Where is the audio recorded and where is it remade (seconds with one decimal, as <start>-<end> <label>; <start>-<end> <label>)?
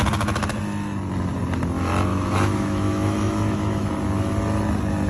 0.0-2.1 recorded; 2.1-3.9 remade; 3.9-5.1 recorded